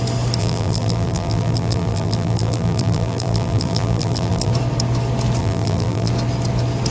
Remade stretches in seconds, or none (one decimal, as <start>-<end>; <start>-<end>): 0.4-4.5; 5.4-6.1